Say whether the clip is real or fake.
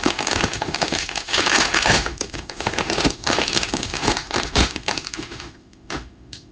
fake